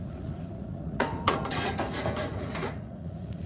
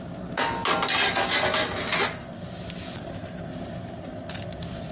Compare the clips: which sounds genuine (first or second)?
second